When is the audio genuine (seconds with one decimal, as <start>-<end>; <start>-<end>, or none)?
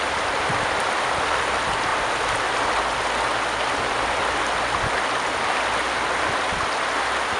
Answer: 0.0-7.4